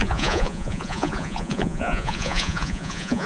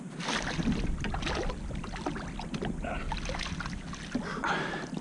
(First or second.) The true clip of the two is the second